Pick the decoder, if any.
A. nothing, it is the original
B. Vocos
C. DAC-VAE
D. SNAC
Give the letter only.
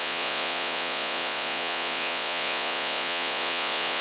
B